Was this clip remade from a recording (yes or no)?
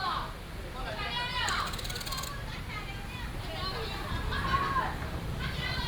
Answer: no